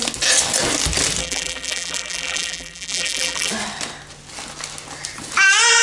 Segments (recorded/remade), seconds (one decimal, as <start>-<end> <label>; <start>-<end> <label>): 0.0-1.2 recorded; 1.2-3.5 remade; 3.5-5.8 recorded